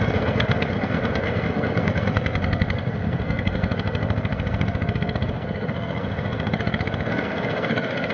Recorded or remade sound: remade